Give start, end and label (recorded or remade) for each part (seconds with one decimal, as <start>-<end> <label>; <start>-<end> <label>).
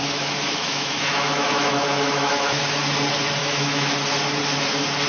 0.0-2.6 remade; 2.6-3.4 recorded; 3.4-3.9 remade; 3.9-5.1 recorded